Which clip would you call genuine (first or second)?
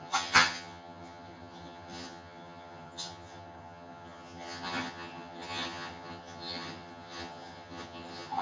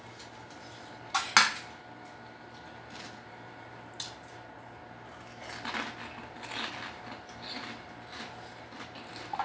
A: second